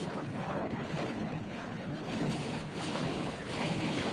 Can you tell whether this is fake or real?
fake